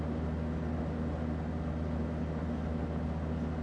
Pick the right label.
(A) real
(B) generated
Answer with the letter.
A